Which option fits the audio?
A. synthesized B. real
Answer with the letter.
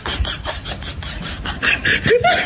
A